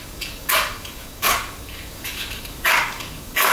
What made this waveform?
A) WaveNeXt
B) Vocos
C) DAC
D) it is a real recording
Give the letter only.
C